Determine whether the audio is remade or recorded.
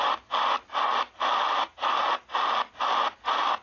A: recorded